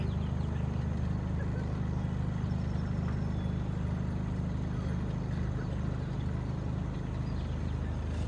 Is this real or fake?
real